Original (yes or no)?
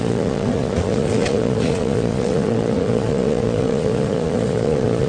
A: no